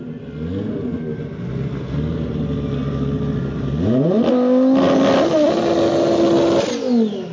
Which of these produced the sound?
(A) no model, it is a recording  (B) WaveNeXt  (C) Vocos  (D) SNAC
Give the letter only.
A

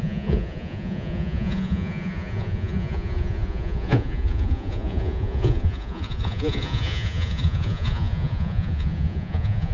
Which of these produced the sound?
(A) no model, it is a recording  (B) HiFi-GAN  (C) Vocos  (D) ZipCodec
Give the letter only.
C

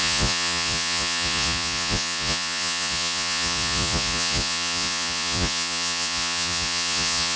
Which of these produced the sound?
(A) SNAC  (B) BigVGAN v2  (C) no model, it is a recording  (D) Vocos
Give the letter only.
D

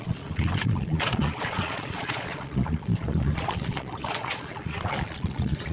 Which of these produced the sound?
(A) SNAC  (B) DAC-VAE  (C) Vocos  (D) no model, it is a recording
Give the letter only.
C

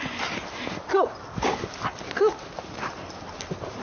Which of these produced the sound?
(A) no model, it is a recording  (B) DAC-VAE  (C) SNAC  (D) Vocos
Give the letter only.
A